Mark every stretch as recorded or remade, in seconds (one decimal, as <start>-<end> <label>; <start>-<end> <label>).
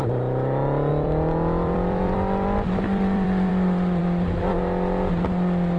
0.0-0.9 recorded; 0.9-3.5 remade; 3.5-5.8 recorded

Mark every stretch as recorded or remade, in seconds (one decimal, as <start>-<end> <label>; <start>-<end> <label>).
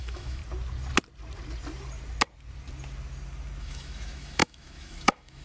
0.0-0.4 remade; 0.4-3.6 recorded; 3.6-5.4 remade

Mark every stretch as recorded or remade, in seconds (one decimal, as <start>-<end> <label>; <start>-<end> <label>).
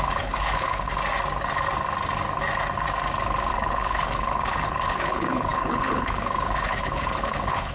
0.0-0.9 remade; 0.9-3.5 recorded; 3.5-7.7 remade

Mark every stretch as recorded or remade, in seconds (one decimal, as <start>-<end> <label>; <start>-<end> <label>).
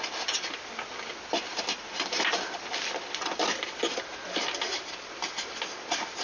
0.0-1.5 recorded; 1.5-4.9 remade; 4.9-6.2 recorded